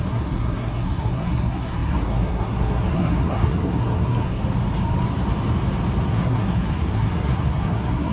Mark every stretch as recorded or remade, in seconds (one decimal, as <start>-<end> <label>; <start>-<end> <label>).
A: 0.0-4.4 remade; 4.4-6.1 recorded; 6.1-8.1 remade